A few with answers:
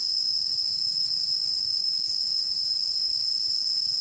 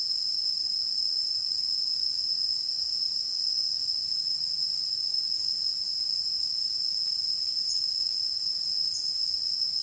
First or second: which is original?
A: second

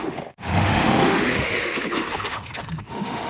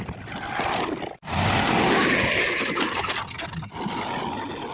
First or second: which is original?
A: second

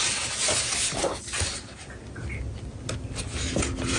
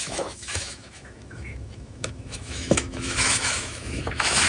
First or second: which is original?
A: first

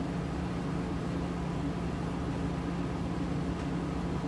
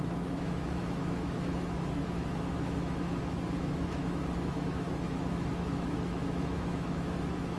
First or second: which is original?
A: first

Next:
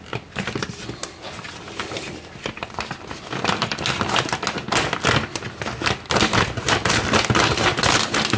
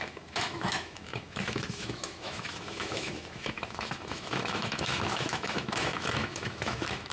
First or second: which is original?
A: first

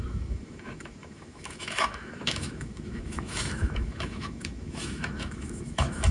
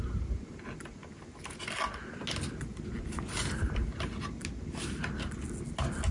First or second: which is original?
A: second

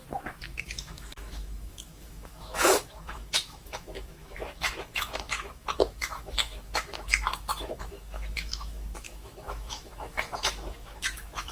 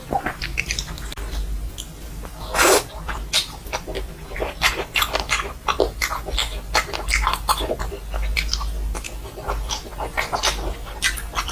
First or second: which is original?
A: second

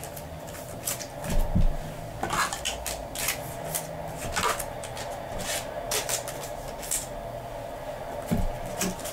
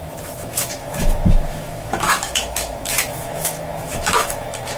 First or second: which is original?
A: first